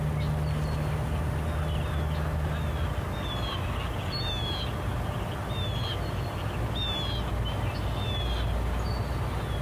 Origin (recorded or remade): recorded